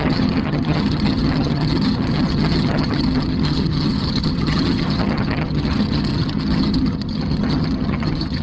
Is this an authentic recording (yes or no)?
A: no